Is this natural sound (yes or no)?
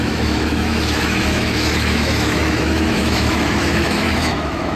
no